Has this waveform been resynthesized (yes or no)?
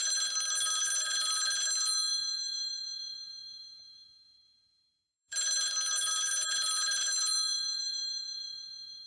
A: yes